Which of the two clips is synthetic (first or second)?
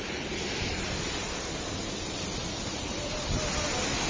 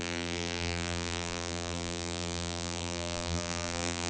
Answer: second